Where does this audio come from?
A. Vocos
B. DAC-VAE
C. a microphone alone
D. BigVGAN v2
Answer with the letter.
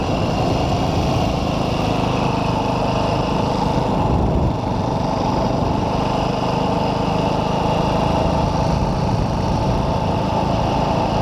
C